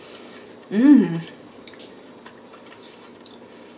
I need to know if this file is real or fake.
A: real